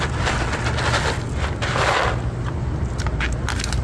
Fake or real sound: real